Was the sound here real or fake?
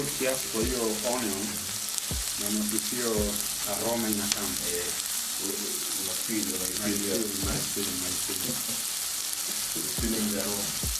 real